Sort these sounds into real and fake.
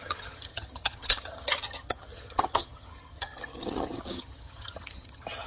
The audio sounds fake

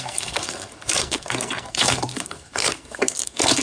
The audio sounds fake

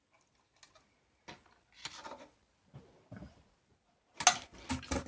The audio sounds real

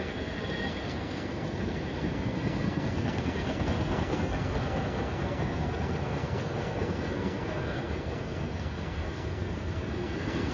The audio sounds fake